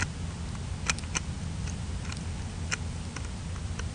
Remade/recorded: recorded